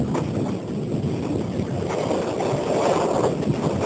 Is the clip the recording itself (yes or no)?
yes